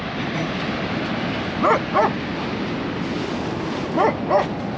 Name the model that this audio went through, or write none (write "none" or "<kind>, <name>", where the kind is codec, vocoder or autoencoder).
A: none